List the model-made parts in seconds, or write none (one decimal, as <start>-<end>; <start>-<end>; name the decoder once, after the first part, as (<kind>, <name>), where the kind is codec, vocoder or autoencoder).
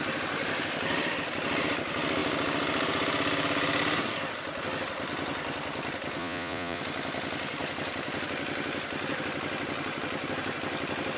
6.2-6.8 (vocoder, Vocos)